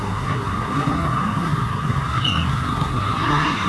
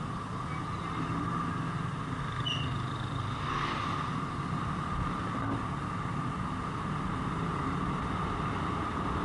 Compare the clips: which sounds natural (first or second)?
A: second